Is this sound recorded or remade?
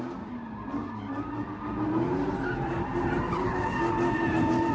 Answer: recorded